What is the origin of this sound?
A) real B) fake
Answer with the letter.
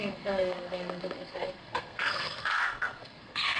B